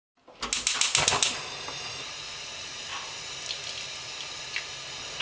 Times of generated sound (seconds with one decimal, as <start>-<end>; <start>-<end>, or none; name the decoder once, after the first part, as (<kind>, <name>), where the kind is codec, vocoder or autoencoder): none

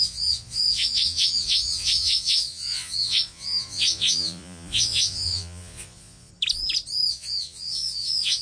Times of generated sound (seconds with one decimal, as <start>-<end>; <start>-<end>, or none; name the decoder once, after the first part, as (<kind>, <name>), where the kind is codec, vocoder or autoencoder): 0.0-6.3 (vocoder, Vocos); 7.1-8.4

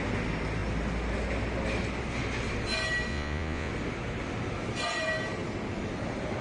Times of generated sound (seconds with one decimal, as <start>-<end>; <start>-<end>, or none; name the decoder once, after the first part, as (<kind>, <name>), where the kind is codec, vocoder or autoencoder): 3.1-3.7 (vocoder, Vocos)

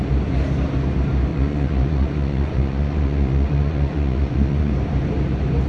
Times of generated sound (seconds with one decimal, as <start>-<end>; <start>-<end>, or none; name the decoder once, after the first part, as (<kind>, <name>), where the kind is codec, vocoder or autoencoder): 1.3-4.7 (vocoder, Vocos)

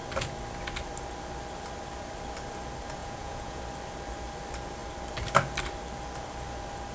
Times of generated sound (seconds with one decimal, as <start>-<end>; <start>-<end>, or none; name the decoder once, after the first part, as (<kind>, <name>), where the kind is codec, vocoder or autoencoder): 3.0-3.6 (vocoder, Vocos)

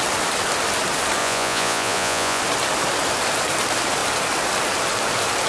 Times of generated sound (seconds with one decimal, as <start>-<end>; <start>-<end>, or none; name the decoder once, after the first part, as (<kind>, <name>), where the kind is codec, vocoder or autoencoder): 1.2-2.4 (vocoder, Vocos)